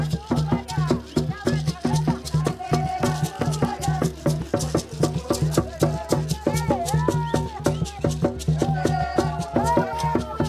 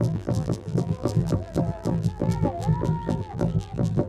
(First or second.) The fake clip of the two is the second